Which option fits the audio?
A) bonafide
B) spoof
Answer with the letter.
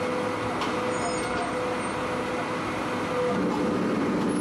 A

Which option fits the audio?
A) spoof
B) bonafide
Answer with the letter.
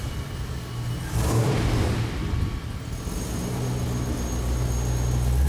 B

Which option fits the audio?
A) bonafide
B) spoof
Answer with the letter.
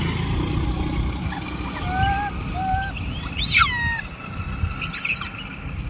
A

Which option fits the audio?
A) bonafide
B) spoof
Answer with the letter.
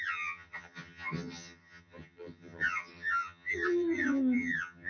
B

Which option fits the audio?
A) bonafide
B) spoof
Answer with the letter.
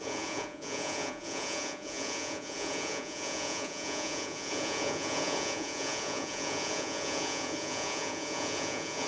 B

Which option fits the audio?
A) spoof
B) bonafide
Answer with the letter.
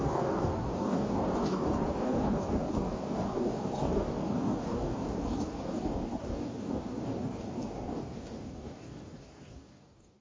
A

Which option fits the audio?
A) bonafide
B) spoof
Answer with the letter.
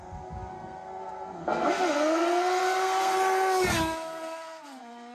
B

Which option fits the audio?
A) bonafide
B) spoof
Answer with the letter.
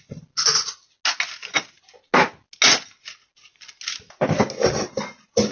A